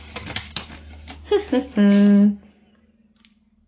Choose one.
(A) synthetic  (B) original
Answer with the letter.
B